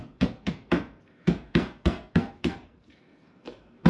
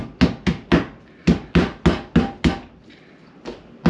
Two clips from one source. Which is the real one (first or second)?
second